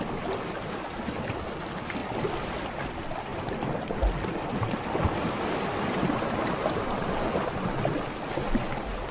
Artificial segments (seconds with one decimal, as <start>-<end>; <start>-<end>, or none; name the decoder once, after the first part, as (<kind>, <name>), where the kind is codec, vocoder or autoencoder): none